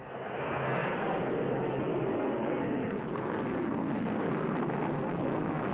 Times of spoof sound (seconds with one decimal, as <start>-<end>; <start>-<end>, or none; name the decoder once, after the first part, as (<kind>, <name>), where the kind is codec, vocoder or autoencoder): 0.0-5.7 (codec, SNAC)

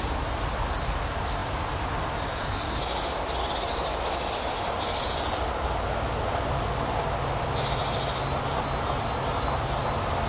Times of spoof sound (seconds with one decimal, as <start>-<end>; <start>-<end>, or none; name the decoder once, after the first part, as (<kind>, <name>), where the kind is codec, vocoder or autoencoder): none

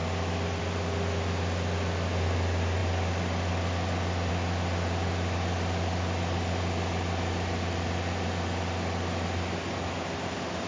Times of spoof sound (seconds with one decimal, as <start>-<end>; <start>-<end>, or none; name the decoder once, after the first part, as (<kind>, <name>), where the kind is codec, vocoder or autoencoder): none

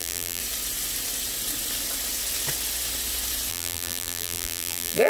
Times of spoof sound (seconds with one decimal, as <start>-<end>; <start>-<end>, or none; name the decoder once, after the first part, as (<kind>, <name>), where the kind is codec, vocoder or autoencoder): 0.0-0.4 (vocoder, BigVGAN v2); 3.5-5.1

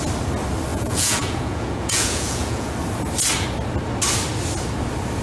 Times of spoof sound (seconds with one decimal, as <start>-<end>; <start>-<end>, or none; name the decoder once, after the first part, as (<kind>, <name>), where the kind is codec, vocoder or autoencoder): 0.7-2.7 (vocoder, Vocos)

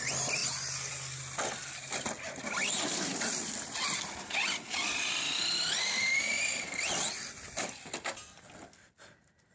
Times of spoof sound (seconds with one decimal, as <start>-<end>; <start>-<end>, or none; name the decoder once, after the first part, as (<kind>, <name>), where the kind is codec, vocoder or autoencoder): none